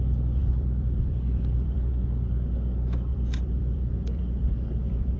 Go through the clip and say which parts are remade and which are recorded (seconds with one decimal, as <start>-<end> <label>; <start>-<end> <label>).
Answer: 0.0-0.4 recorded; 0.4-1.9 remade; 1.9-3.1 recorded; 3.1-5.2 remade